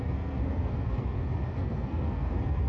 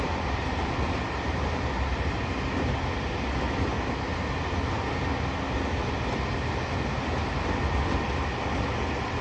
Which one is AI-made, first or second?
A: first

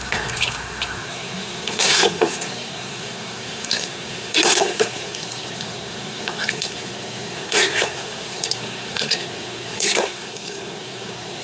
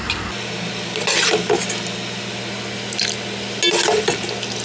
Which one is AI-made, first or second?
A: first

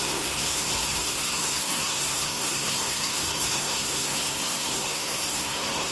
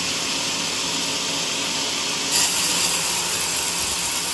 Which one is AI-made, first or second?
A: first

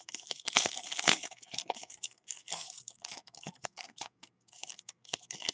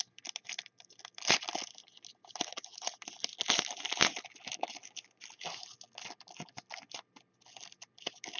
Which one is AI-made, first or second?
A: first